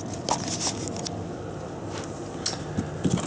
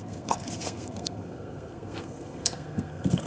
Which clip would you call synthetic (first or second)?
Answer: second